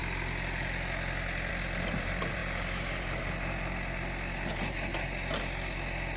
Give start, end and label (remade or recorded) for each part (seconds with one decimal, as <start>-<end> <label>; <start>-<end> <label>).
0.0-1.5 recorded; 1.5-2.4 remade; 2.4-6.2 recorded